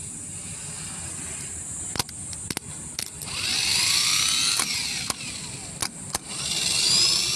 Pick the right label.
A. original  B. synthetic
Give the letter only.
A